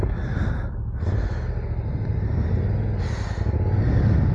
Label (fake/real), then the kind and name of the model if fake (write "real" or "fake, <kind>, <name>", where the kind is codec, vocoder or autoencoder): real